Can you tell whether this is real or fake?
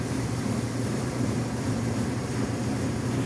fake